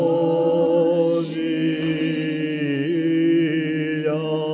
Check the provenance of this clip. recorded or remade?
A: recorded